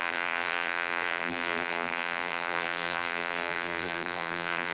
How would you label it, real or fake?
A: fake